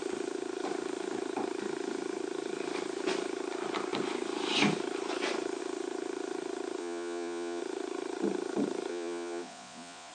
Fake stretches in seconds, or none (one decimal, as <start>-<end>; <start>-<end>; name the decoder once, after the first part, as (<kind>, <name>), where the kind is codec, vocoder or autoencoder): 6.8-7.6 (vocoder, Vocos); 8.9-10.1